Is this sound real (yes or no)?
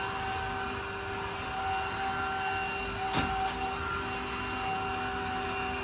yes